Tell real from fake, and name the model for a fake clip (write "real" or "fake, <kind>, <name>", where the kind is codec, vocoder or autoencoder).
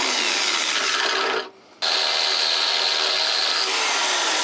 real